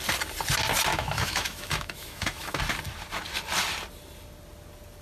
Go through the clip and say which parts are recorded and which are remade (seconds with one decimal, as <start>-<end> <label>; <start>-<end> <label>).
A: 0.0-0.9 recorded; 0.9-2.6 remade; 2.6-5.0 recorded